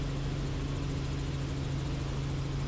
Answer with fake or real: real